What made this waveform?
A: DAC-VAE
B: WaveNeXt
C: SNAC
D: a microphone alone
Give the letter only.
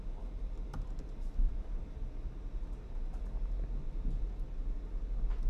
D